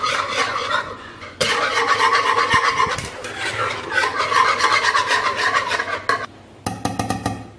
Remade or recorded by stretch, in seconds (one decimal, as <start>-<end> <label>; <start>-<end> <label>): 0.0-0.5 recorded; 0.5-1.8 remade; 1.8-7.6 recorded